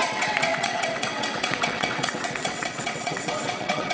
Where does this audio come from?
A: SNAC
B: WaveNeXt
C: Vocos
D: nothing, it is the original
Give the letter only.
B